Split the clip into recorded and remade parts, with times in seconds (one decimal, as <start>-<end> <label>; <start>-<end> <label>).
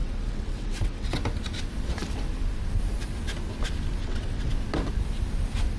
0.0-1.2 remade; 1.2-4.0 recorded; 4.0-4.5 remade; 4.5-5.8 recorded